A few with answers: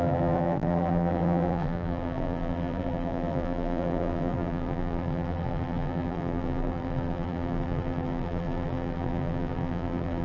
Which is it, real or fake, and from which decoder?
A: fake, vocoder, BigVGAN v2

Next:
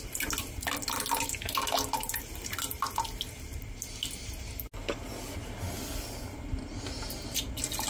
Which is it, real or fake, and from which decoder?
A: real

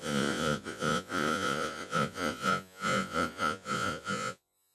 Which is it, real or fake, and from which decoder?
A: fake, vocoder, Vocos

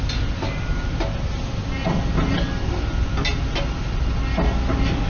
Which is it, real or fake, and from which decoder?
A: real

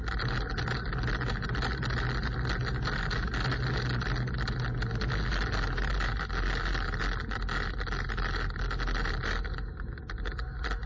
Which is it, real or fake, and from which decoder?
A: real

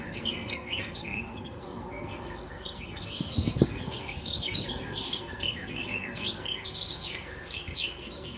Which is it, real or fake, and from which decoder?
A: fake, codec, SNAC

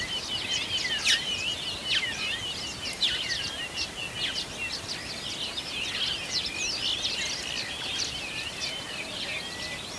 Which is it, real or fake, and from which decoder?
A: real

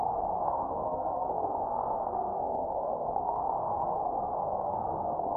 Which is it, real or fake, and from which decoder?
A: fake, codec, SNAC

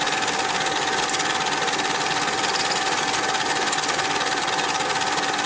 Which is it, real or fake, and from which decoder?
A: real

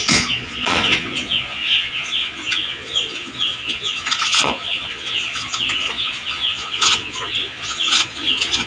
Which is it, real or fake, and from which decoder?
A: fake, vocoder, Vocos